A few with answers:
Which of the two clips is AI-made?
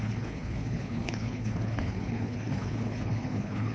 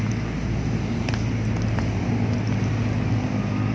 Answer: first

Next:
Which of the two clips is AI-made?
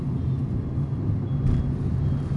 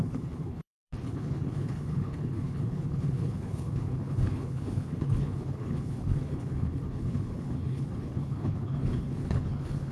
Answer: second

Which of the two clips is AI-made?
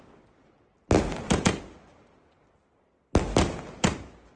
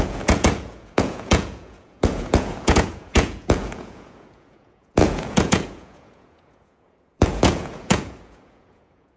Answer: second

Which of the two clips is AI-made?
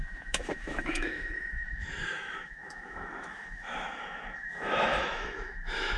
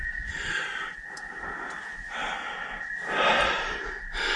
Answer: first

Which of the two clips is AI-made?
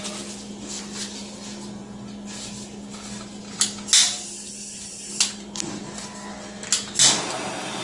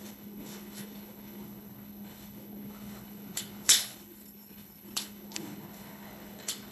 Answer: second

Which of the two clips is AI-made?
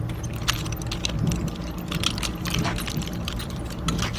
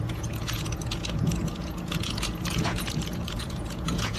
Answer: second